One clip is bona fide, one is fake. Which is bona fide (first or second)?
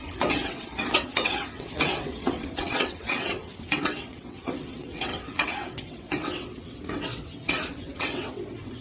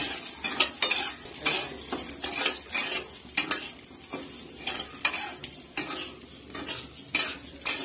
second